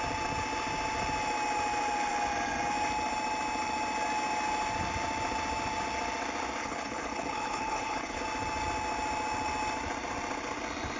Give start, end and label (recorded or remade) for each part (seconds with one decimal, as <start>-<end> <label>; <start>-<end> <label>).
0.0-6.6 recorded; 6.6-8.2 remade; 8.2-11.0 recorded